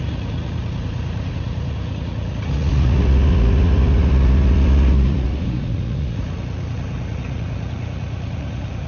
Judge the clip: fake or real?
fake